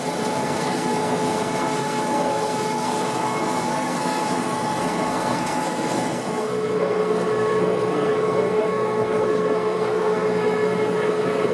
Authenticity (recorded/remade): remade